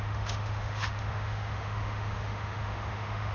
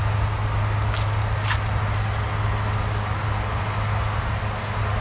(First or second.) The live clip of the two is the second